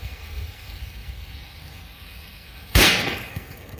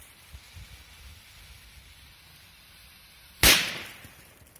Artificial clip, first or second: first